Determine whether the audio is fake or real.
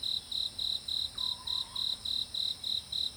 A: real